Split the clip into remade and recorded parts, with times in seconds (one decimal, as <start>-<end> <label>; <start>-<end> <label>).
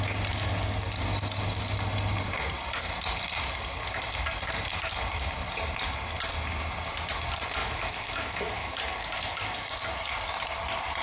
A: 0.0-7.6 recorded; 7.6-8.8 remade; 8.8-11.0 recorded